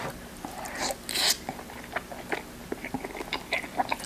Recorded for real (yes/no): yes